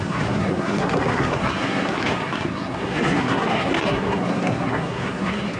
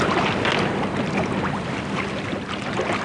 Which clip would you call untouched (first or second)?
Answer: second